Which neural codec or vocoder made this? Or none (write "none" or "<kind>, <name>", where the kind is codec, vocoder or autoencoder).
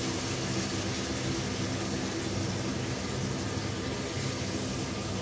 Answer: none